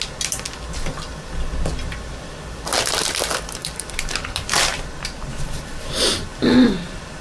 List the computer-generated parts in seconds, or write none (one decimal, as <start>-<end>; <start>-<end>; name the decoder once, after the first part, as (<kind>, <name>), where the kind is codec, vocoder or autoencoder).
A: 3.6-4.5 (vocoder, BigVGAN v2); 6.3-7.2